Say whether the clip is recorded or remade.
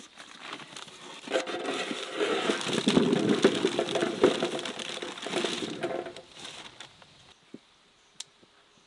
recorded